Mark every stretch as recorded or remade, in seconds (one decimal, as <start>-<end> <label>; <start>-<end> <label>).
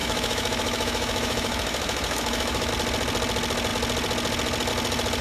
0.0-2.7 remade; 2.7-5.2 recorded